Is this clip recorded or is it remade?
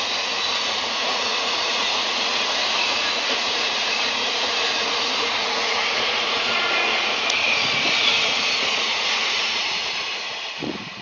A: remade